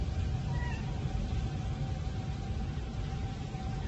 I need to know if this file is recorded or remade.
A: recorded